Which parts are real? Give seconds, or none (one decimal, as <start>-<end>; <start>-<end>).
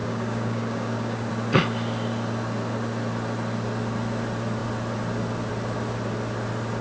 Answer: 1.3-6.8